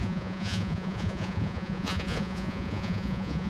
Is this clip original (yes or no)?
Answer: no